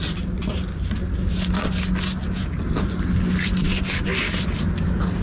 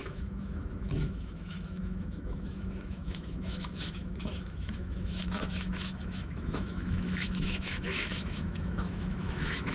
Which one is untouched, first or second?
first